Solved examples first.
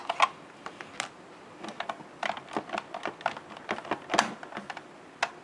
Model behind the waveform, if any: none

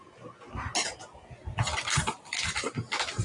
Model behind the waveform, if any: none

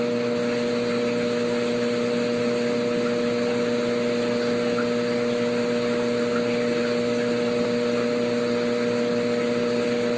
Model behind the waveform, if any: none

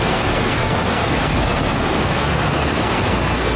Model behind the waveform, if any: codec, SNAC